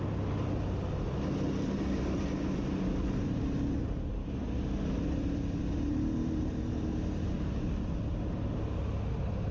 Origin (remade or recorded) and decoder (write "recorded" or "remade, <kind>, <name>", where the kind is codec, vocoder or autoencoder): recorded